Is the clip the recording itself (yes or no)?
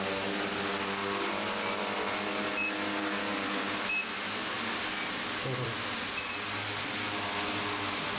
yes